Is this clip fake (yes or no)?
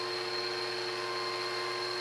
no